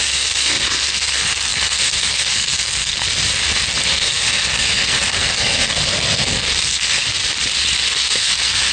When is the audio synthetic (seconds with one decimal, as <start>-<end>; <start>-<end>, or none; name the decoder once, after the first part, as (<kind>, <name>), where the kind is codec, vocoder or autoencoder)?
0.0-3.0 (codec, SNAC); 3.9-7.0; 7.9-8.7